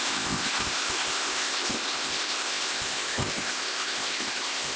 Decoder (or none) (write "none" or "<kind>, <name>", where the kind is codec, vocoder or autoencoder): codec, ZipCodec